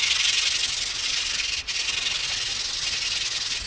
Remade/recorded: recorded